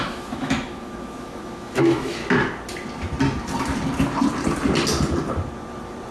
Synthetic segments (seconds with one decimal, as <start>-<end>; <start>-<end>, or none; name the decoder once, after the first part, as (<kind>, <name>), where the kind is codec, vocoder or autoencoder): 0.0-2.2 (autoencoder, DAC-VAE)